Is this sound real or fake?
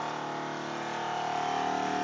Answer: real